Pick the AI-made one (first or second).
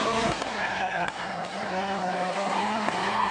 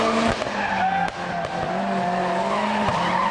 first